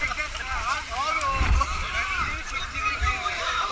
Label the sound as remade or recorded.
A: remade